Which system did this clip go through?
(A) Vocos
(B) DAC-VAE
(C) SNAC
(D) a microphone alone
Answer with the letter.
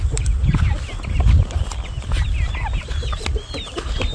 D